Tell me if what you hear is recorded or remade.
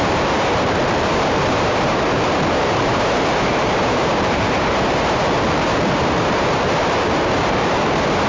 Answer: remade